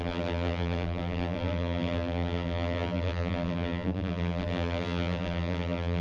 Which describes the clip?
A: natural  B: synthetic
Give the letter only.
B